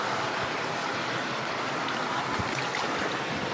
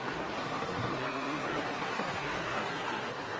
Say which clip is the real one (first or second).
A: first